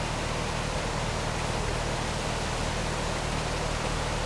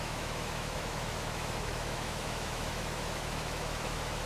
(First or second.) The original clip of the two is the first